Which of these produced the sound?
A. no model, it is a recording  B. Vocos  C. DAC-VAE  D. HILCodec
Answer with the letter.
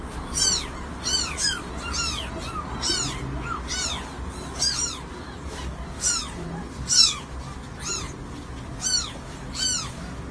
A